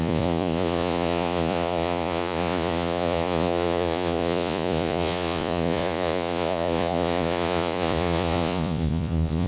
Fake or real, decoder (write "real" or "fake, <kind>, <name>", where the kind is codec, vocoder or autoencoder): fake, vocoder, Vocos